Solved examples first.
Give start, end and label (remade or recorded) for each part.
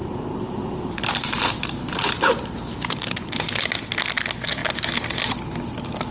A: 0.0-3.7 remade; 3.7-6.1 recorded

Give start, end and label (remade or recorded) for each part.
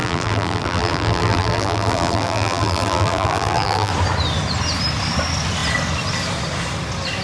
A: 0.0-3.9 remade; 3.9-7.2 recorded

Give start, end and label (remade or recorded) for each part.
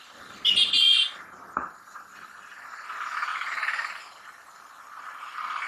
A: 0.0-3.3 recorded; 3.3-4.6 remade; 4.6-5.7 recorded